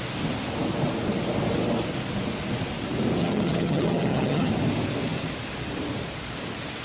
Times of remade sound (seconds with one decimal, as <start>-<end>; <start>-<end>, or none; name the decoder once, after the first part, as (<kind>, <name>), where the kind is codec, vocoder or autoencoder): 3.2-4.5 (vocoder, HiFi-GAN)